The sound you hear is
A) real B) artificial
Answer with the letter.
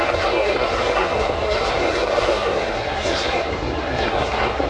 B